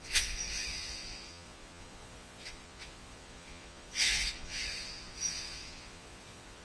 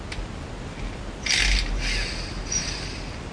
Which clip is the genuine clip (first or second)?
second